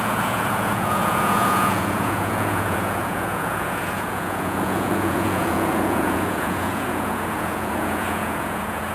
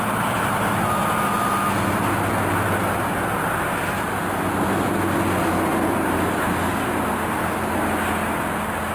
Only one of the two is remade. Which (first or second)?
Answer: first